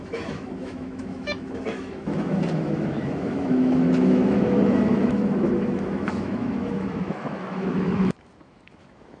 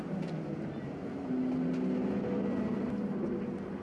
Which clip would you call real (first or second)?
second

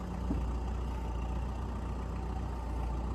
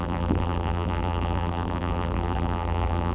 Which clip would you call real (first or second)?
first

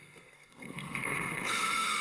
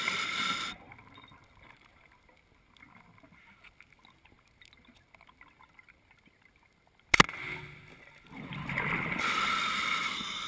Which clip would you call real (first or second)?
second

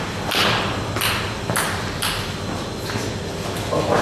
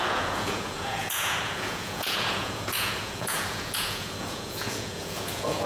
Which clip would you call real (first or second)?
first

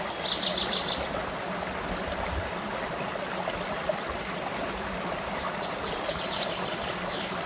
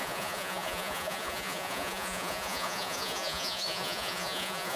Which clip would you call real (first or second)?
first